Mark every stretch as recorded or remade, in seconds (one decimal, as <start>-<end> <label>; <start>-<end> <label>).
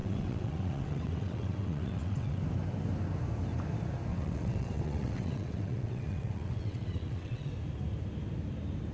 0.0-2.4 remade; 2.4-4.1 recorded; 4.1-7.5 remade; 7.5-8.9 recorded